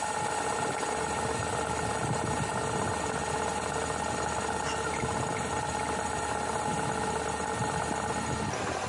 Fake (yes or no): no